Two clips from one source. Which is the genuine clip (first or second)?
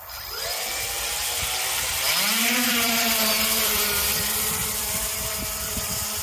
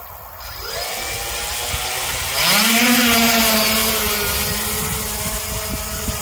second